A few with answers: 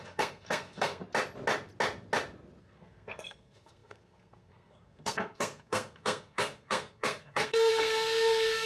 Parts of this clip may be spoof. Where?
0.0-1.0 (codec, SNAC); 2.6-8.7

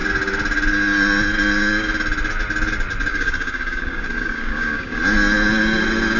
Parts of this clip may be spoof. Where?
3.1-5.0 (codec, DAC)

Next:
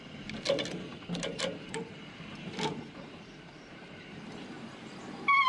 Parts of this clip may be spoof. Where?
0.9-4.1 (vocoder, BigVGAN v2)

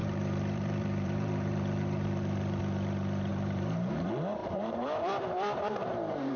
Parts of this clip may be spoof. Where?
0.0-2.6 (vocoder, BigVGAN v2); 3.3-4.0; 4.4-6.4

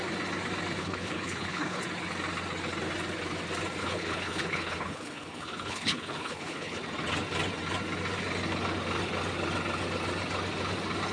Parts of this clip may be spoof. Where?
0.8-1.8 (codec, HILCodec); 3.8-6.8

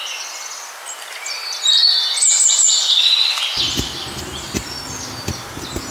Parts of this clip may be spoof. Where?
none

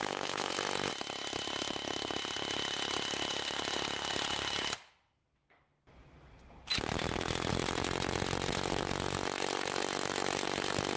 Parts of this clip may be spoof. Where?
0.0-0.5 (autoencoder, DAC-VAE)